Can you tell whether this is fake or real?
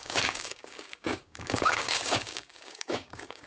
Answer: fake